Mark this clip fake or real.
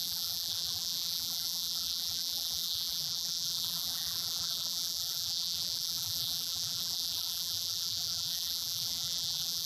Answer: fake